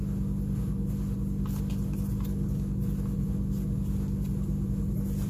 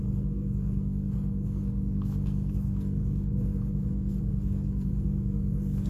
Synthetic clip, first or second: second